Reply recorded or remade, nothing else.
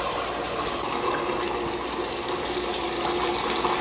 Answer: recorded